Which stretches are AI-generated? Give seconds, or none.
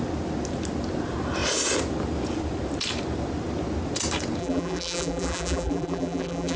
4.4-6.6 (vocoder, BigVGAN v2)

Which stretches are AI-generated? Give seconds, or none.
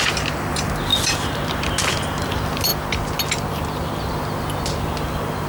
none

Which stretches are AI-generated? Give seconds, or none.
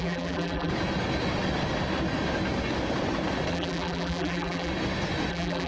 0.0-0.7 (vocoder, BigVGAN v2); 3.5-4.7; 5.3-5.7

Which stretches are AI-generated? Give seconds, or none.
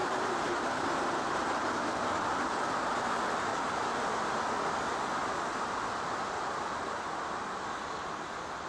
0.0-3.1 (vocoder, BigVGAN v2); 3.5-4.0; 5.2-7.0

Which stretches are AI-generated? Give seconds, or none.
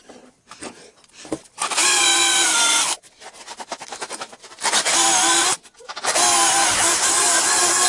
0.0-7.9 (vocoder, BigVGAN v2)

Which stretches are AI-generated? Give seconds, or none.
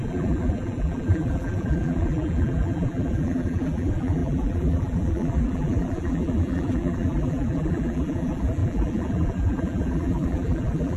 0.0-11.0 (vocoder, BigVGAN v2)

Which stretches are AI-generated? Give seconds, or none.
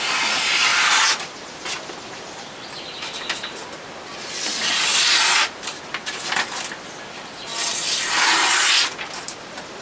0.7-3.2 (vocoder, BigVGAN v2); 7.5-8.5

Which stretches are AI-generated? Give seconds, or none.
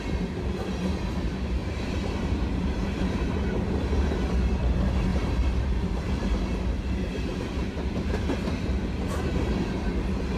1.6-3.2 (vocoder, BigVGAN v2); 5.1-8.2